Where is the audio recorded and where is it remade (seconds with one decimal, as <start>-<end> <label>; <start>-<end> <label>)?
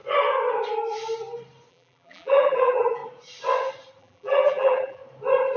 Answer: 0.0-1.7 recorded; 1.7-3.0 remade; 3.0-4.0 recorded; 4.0-5.0 remade; 5.0-5.6 recorded